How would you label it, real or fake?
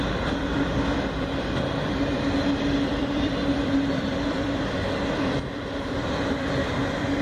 fake